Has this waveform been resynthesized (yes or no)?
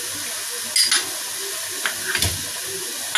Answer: no